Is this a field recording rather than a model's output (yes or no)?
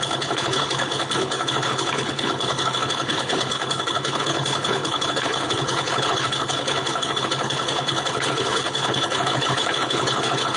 no